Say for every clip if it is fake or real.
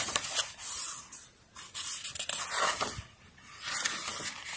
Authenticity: real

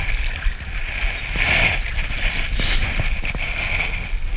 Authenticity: real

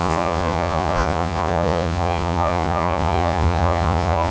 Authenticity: fake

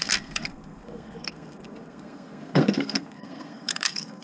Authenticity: fake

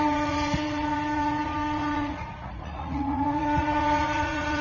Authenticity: fake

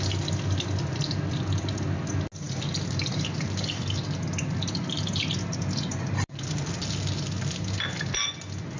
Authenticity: real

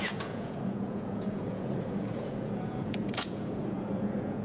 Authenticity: fake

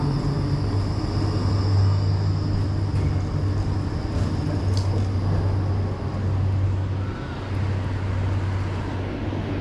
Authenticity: real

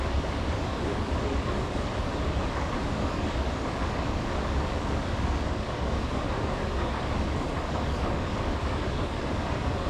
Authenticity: fake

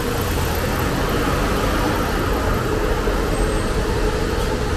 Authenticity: real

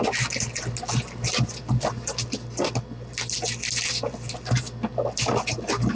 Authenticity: real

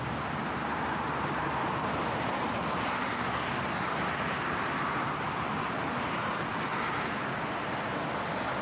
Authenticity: real